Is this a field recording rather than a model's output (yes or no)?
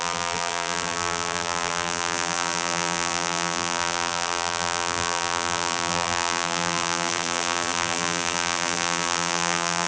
no